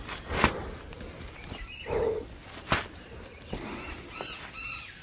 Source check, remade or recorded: recorded